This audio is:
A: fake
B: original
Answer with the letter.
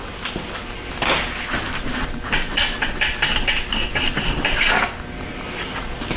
B